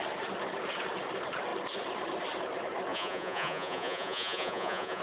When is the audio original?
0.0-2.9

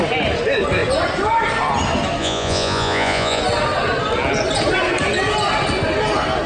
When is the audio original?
0.0-2.2; 3.4-6.5

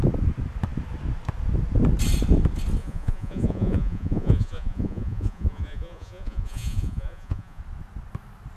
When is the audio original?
0.0-2.8; 7.6-8.6

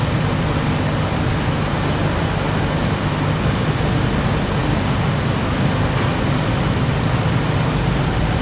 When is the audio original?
0.0-8.4